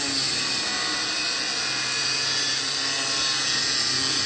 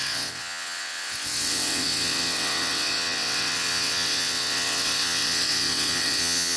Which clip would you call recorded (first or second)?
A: first